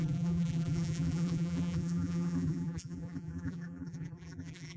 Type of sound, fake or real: fake